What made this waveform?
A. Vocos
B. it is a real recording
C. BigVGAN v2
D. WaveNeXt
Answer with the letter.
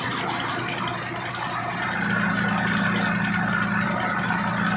B